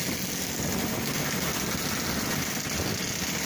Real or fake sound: real